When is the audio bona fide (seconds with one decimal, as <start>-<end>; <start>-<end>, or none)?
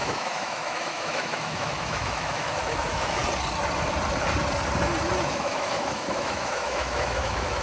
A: 3.2-5.2